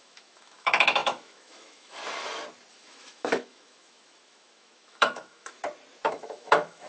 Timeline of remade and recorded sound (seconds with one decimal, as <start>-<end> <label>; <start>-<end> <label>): 0.0-2.0 remade; 2.0-2.7 recorded; 2.7-5.6 remade; 5.6-6.1 recorded; 6.1-6.9 remade